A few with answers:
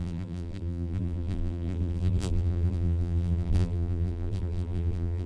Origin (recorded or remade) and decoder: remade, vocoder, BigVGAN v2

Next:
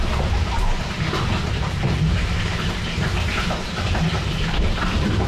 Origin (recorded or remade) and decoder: remade, vocoder, BigVGAN v2